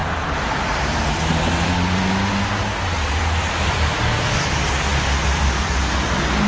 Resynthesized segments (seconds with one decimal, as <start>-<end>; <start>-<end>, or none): 0.0-1.7; 3.4-4.5; 4.9-5.8